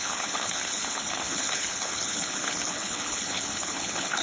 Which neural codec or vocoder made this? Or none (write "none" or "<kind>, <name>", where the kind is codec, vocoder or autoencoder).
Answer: codec, HILCodec